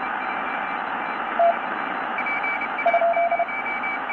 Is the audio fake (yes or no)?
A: yes